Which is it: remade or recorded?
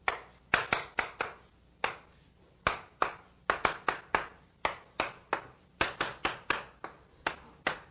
recorded